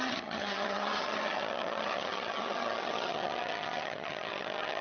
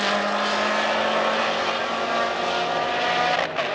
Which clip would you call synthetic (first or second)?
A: first